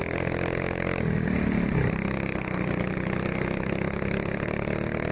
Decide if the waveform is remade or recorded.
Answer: recorded